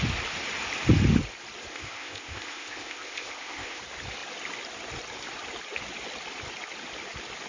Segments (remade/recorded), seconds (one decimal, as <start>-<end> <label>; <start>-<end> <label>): 0.0-1.7 recorded; 1.7-3.8 remade; 3.8-7.5 recorded